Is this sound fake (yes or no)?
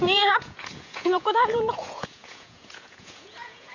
yes